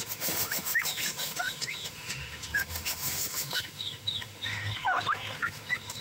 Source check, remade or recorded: remade